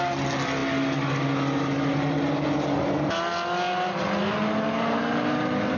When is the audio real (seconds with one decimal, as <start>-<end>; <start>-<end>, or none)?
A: 0.0-5.8

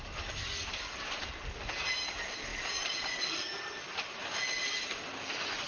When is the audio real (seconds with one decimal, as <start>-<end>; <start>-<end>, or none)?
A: 0.0-5.7